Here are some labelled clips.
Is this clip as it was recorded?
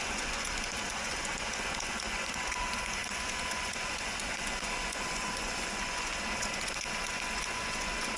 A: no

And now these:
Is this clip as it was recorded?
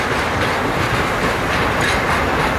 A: yes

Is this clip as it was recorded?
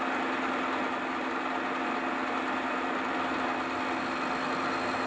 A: yes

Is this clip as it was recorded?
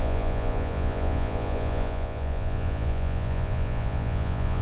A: no